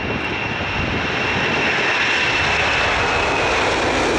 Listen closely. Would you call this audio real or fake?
real